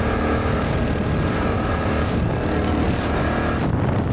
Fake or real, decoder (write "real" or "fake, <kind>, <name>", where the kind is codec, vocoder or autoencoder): real